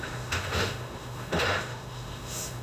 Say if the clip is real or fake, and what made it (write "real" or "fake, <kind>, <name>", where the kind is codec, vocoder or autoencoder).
fake, autoencoder, DAC-VAE